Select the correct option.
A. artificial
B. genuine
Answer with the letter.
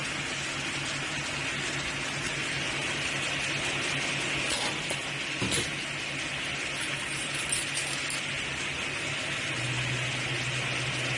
B